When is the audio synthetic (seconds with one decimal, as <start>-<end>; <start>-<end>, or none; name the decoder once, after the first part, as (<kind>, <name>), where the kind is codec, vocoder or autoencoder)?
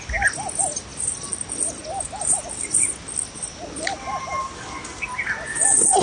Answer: none